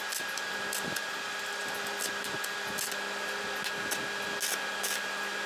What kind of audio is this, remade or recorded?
recorded